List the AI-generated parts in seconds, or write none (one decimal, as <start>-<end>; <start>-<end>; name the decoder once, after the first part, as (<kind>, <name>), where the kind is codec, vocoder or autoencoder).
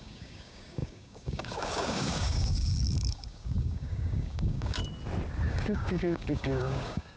0.0-4.8 (codec, DAC); 5.5-7.2